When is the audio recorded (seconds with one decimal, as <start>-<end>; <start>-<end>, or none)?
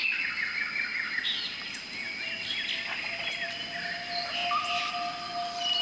0.0-4.4; 4.9-5.8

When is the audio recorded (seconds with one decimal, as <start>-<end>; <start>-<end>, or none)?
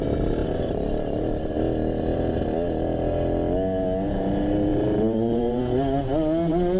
0.0-0.4; 1.5-4.7; 5.6-6.8